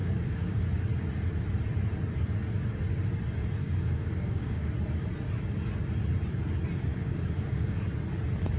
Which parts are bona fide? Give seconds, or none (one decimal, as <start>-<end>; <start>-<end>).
0.6-3.6; 4.7-6.9; 7.8-8.6